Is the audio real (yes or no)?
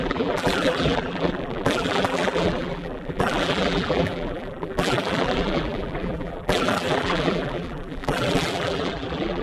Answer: no